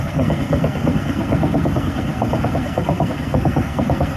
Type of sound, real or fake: fake